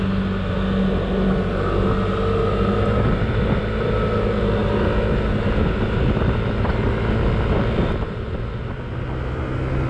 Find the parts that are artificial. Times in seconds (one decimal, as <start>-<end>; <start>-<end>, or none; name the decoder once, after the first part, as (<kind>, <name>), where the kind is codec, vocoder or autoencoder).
none